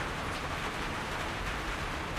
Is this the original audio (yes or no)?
no